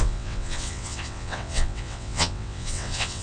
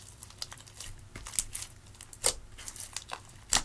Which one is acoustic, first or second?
second